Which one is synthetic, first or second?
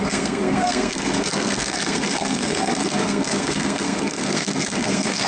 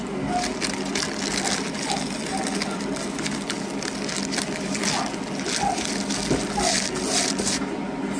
first